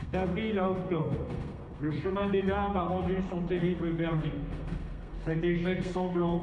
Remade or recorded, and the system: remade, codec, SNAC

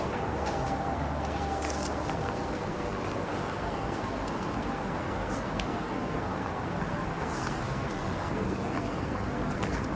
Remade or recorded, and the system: remade, codec, SNAC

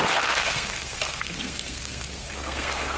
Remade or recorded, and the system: remade, codec, SNAC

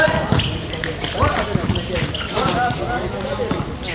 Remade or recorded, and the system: recorded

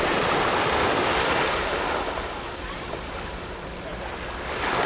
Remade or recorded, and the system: recorded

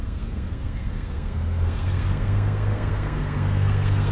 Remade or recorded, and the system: remade, codec, SNAC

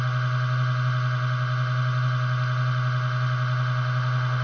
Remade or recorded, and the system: recorded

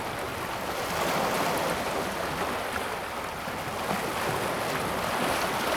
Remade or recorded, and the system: recorded